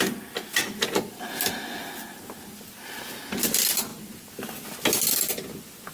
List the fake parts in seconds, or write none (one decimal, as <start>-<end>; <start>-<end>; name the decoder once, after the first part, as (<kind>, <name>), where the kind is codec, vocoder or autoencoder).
none